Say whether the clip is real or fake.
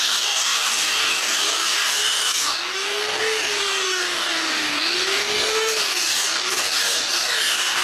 fake